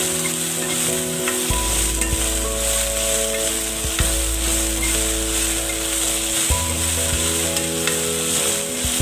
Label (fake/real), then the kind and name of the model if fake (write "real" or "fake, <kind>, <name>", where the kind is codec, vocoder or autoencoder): real